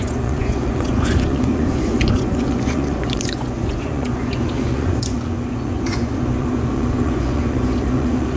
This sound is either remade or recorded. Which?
remade